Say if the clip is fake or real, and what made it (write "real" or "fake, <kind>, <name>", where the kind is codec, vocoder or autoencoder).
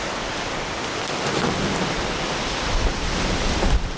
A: real